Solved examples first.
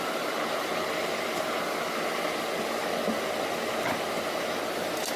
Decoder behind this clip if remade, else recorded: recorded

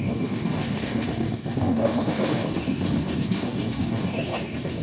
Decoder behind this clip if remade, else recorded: remade, codec, DAC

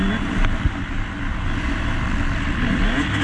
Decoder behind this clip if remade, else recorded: recorded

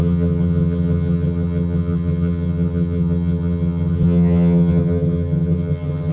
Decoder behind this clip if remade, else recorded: remade, vocoder, HiFi-GAN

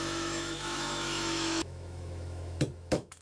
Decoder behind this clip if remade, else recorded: remade, autoencoder, DAC-VAE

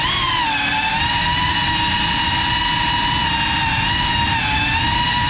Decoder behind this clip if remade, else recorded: recorded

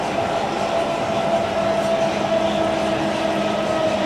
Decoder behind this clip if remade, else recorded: recorded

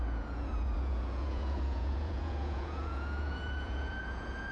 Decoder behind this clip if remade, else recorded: remade, vocoder, Vocos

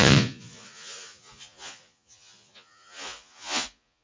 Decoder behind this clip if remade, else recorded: remade, vocoder, Vocos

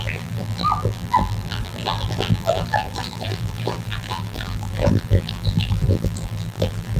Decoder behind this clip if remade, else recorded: remade, vocoder, BigVGAN v2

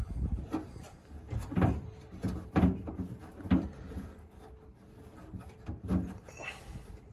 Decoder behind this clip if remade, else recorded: recorded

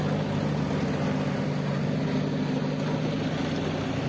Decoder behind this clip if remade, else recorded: recorded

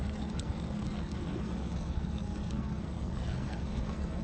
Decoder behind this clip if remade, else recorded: remade, codec, SNAC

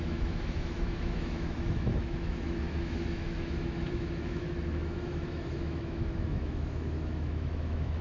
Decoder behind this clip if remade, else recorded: remade, autoencoder, DAC-VAE